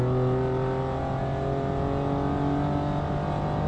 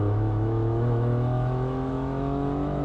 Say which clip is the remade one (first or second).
second